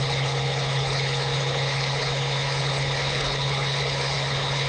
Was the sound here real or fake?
fake